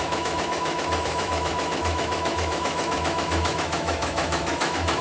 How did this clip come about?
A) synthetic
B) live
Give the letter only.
A